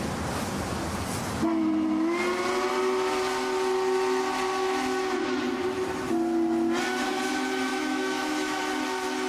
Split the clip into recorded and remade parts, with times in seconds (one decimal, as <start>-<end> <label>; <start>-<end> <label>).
0.0-7.7 recorded; 7.7-8.6 remade; 8.6-9.3 recorded